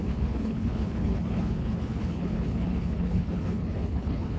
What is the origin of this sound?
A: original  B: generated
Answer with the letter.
B